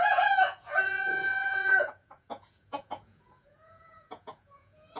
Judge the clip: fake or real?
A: fake